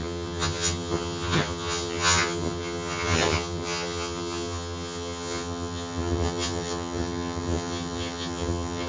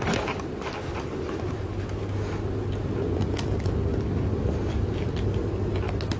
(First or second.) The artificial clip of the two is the first